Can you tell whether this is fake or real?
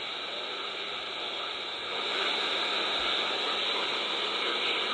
real